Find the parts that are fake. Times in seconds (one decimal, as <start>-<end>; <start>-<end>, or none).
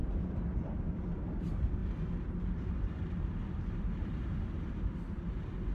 0.0-0.8; 1.8-5.2